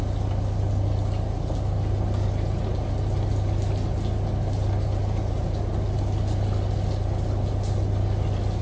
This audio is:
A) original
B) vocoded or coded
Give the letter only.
A